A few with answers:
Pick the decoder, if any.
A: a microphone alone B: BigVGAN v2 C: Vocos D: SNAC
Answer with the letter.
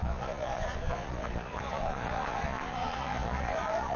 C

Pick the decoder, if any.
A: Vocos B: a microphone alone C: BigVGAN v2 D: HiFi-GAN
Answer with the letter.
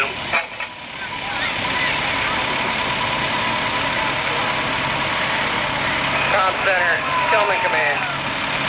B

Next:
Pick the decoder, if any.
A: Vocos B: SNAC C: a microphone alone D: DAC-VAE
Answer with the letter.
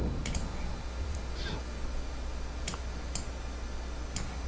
C